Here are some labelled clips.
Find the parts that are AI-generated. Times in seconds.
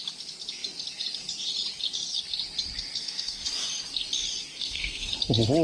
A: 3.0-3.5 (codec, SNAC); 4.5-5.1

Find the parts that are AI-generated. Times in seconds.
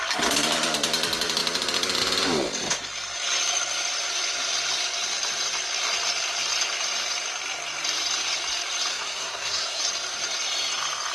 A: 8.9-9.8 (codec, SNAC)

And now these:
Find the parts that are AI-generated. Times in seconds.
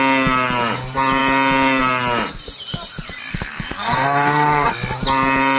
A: 3.3-4.7 (codec, SNAC)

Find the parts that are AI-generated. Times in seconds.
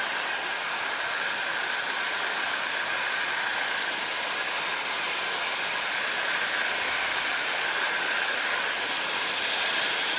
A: none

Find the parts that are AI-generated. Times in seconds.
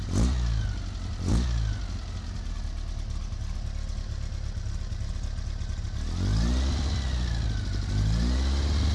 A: none